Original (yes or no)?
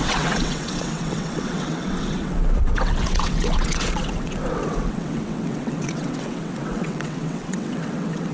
no